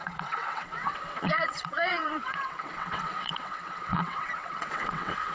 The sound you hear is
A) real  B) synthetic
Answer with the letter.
B